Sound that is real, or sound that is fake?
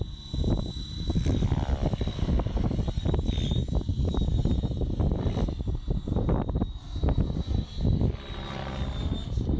fake